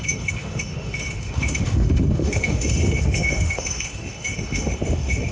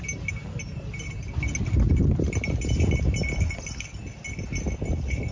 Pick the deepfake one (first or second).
first